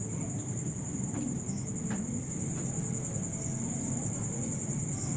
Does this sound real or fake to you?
real